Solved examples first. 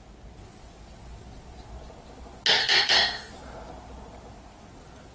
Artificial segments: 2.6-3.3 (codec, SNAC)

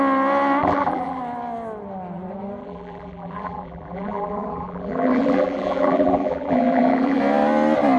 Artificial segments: 0.6-1.2 (vocoder, BigVGAN v2); 2.6-7.2

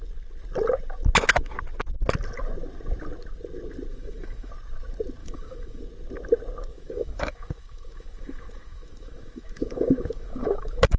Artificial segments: 3.9-4.5 (autoencoder, DAC-VAE); 5.2-5.8; 6.7-11.0

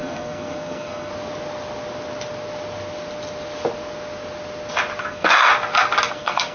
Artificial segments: 0.0-1.1 (codec, SNAC); 5.0-5.5; 6.1-6.5

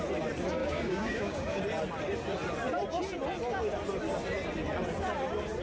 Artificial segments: 0.6-1.6 (codec, DAC)

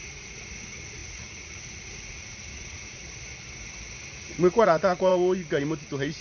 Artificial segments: 0.0-3.0 (vocoder, Vocos); 4.1-5.1

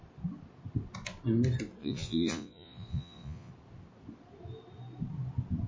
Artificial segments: 1.8-3.5 (vocoder, Vocos)

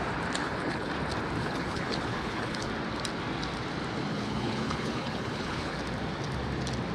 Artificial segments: 0.4-0.9 (codec, HILCodec); 1.4-2.7; 4.1-5.8